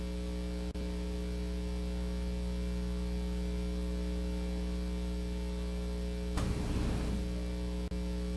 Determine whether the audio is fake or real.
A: real